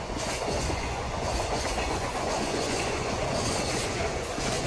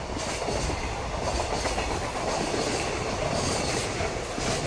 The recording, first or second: second